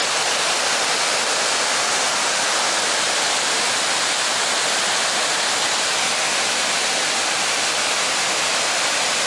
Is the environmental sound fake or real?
real